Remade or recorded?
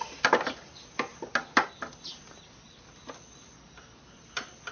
recorded